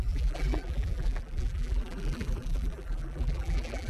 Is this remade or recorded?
remade